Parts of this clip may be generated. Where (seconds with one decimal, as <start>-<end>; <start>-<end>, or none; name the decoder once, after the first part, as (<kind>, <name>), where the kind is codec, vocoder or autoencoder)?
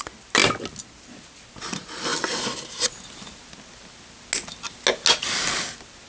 none